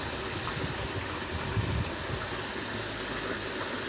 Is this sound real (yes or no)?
yes